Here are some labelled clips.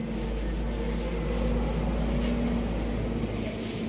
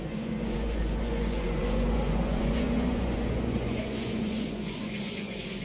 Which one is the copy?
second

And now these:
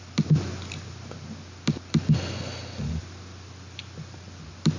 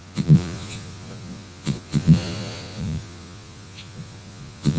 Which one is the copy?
second